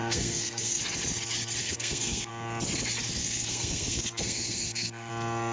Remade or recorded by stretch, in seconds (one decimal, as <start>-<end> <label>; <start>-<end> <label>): 0.0-0.8 remade; 0.8-1.6 recorded; 1.6-2.3 remade; 2.3-3.2 recorded; 3.2-5.1 remade; 5.1-5.5 recorded